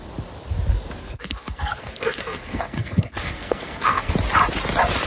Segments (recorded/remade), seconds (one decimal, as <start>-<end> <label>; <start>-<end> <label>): 0.0-1.0 recorded; 1.0-4.1 remade; 4.1-5.1 recorded